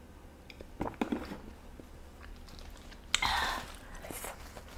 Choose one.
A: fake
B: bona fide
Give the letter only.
B